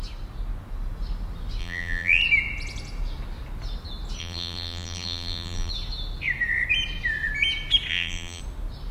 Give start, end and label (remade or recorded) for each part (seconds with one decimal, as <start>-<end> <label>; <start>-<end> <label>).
0.0-1.6 recorded; 1.6-2.2 remade; 2.2-4.2 recorded; 4.2-5.7 remade; 5.7-7.9 recorded; 7.9-8.4 remade; 8.4-8.9 recorded